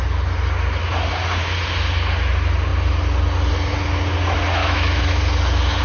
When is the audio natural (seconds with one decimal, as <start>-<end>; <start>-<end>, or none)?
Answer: 0.0-4.6; 5.2-5.8